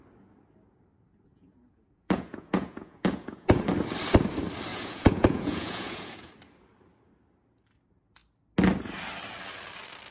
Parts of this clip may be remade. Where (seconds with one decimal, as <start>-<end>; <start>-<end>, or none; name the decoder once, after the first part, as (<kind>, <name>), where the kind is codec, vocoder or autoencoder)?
1.3-3.6 (vocoder, Vocos); 4.7-6.3